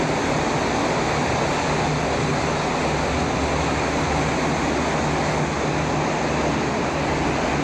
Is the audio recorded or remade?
recorded